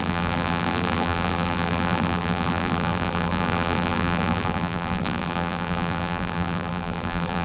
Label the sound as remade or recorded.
remade